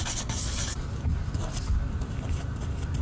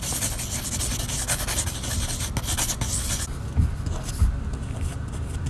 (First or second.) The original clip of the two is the second